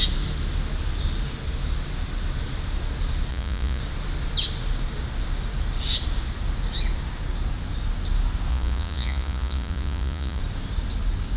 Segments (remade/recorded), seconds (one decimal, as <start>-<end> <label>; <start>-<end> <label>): 0.0-3.3 recorded; 3.3-3.8 remade; 3.8-8.5 recorded; 8.5-10.4 remade; 10.4-11.4 recorded